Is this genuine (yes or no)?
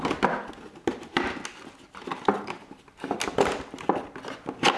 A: yes